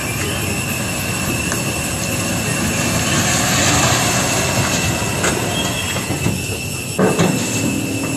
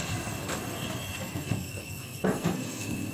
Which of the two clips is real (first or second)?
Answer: first